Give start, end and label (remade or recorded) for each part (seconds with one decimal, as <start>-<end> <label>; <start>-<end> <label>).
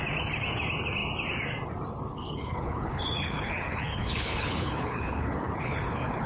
0.0-2.1 recorded; 2.1-6.3 remade